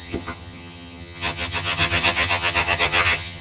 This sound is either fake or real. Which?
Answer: fake